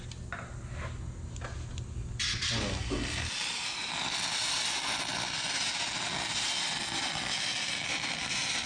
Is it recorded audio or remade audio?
recorded